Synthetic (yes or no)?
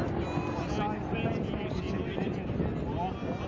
no